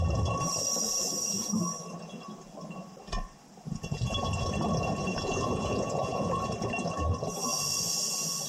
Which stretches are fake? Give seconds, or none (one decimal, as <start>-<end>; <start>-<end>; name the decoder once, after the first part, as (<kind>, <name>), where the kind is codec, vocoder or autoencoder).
5.1-6.4 (vocoder, Vocos)